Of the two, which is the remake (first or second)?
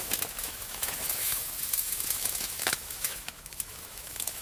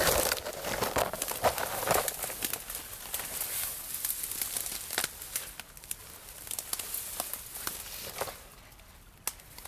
first